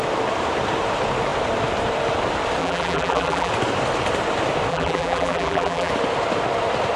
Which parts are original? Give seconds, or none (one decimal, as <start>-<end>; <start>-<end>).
0.0-2.6; 3.5-4.7; 5.9-7.0